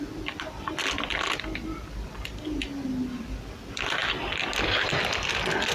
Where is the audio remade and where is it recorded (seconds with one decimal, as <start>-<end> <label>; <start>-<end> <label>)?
0.0-5.7 recorded